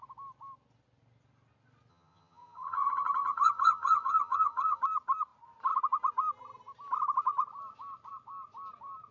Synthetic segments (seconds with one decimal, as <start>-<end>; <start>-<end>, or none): 1.9-4.8